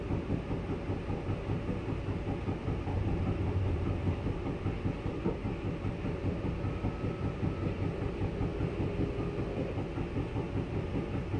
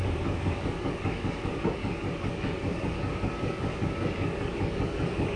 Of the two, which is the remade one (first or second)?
second